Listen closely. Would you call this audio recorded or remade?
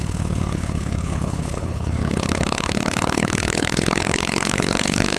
remade